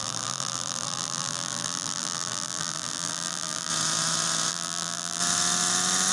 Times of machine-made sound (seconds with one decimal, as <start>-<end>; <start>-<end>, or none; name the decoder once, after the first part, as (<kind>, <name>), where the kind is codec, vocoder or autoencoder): 0.0-3.7 (vocoder, BigVGAN v2); 4.5-5.2

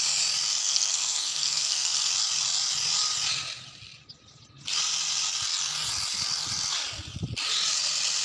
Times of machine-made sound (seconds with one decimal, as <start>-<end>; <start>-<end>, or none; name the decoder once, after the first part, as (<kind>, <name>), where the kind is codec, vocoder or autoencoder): 0.6-2.1 (codec, SNAC)

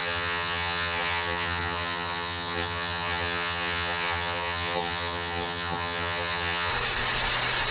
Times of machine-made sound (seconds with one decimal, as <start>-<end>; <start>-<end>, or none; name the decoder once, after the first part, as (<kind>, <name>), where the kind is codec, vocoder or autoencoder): 0.0-6.7 (vocoder, HiFi-GAN)